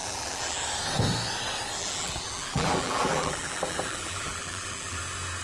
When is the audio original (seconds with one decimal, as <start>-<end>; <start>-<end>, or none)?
0.6-1.8; 5.0-5.4

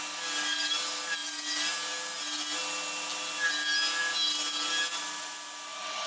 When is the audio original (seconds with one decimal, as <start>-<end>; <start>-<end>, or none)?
0.0-6.1

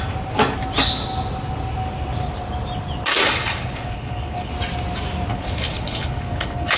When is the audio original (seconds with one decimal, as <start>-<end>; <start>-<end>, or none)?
0.0-3.2; 4.5-5.3

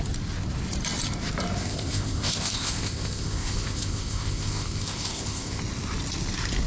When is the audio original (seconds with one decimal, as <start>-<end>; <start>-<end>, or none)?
0.0-1.6; 5.6-6.7

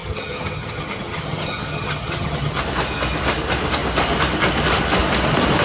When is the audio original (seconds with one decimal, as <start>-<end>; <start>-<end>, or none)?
2.6-5.6

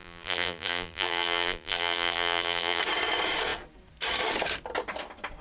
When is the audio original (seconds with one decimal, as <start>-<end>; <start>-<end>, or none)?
2.8-5.4

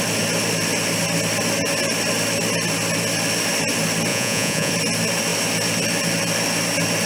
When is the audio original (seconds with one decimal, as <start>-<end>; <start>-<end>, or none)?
0.0-4.1; 4.7-7.1

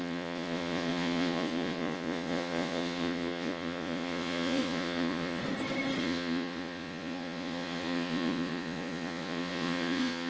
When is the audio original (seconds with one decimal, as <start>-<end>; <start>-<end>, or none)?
5.4-6.0